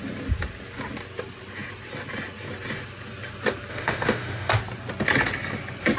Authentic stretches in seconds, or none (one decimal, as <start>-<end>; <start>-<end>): 0.0-3.7; 4.5-6.0